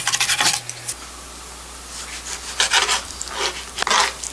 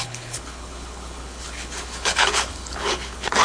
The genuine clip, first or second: first